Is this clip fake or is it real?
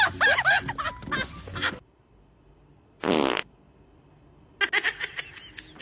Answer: real